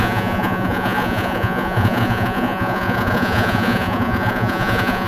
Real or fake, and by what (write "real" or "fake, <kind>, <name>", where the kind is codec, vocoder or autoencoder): fake, vocoder, Vocos